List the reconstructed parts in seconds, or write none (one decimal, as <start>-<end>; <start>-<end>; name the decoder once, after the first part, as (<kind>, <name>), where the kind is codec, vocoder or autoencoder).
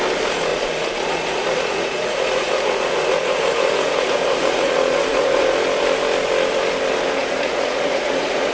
0.5-5.4 (vocoder, Vocos); 7.2-8.5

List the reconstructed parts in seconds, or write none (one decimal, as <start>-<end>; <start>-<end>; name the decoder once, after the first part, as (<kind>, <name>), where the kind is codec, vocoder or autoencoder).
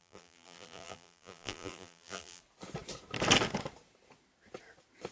0.0-2.4 (vocoder, BigVGAN v2)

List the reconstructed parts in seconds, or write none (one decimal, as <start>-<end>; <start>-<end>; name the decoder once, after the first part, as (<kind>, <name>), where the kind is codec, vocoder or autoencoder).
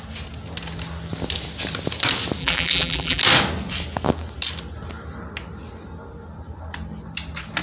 2.4-3.2 (vocoder, BigVGAN v2)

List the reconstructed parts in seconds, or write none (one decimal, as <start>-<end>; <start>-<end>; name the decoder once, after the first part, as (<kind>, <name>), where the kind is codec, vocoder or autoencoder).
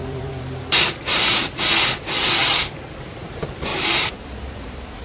0.0-1.4 (vocoder, BigVGAN v2); 3.0-5.0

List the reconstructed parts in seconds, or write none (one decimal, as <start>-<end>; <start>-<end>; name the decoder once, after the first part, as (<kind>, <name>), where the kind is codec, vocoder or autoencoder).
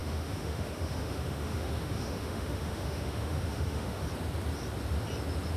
0.0-4.0 (autoencoder, DAC-VAE)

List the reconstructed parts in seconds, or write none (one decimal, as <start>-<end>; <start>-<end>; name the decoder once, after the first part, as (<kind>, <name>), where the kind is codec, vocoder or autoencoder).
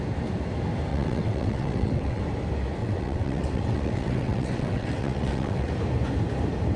0.9-2.2 (vocoder, WaveNeXt); 2.8-5.7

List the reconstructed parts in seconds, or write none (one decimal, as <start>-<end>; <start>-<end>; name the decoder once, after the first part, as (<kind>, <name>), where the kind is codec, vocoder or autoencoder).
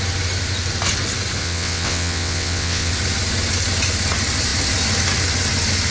1.4-2.9 (vocoder, WaveNeXt)